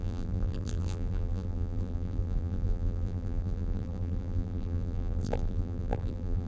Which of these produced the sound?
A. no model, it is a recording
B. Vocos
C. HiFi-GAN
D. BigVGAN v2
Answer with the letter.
D